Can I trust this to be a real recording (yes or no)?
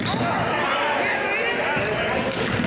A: yes